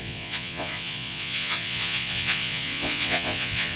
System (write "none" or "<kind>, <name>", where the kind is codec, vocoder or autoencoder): vocoder, Vocos